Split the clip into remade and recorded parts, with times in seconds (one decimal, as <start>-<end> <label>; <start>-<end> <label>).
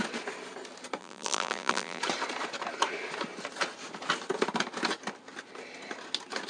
0.0-1.0 recorded; 1.0-2.0 remade; 2.0-6.5 recorded